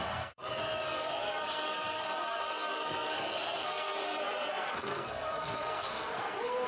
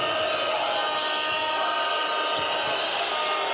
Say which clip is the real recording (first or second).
second